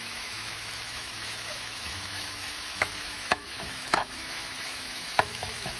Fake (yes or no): yes